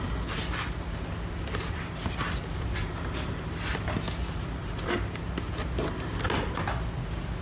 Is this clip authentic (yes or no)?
yes